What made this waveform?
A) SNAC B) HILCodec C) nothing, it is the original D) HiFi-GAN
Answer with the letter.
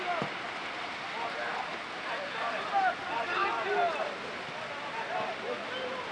C